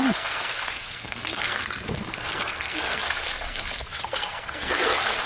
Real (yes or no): no